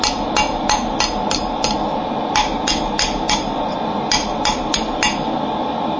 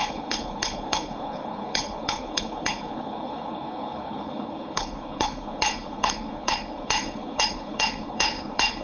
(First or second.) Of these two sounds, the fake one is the second